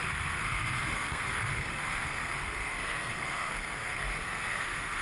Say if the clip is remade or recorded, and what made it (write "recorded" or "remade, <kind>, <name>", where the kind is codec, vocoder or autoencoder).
remade, codec, SNAC